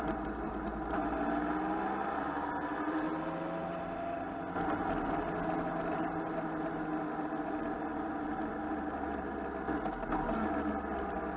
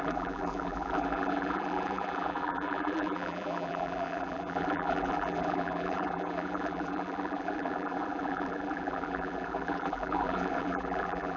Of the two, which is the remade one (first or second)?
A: second